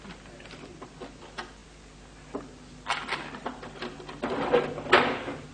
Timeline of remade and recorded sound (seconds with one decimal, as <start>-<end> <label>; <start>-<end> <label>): 0.0-5.5 recorded

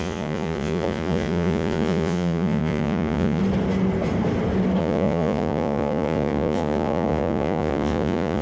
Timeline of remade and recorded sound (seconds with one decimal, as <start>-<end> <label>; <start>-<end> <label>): 0.0-3.4 remade; 3.4-4.8 recorded; 4.8-8.4 remade

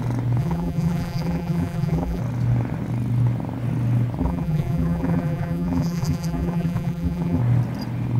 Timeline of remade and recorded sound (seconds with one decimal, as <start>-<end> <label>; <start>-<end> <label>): 0.0-0.4 recorded; 0.4-2.2 remade; 2.2-4.2 recorded; 4.2-7.4 remade; 7.4-8.2 recorded

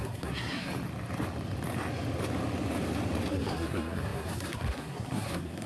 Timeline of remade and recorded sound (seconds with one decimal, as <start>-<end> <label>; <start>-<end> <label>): 0.0-0.7 remade; 0.7-3.3 recorded; 3.3-5.7 remade

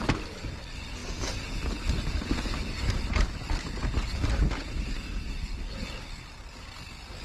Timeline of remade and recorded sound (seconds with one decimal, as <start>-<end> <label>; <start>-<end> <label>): 0.0-7.2 recorded